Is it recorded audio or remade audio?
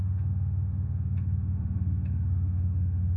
remade